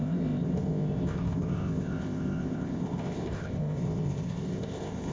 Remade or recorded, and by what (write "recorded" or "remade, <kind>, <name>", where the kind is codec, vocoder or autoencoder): remade, codec, ZipCodec